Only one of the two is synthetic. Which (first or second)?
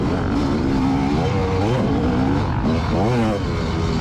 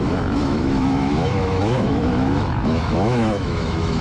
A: second